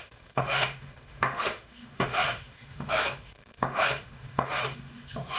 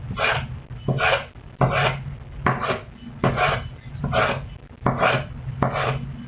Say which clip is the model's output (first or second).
first